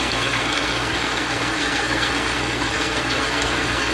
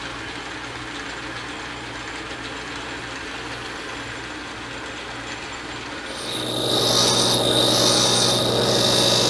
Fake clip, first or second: first